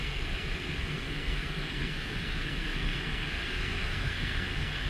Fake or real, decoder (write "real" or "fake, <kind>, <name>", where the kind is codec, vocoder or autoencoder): fake, codec, SNAC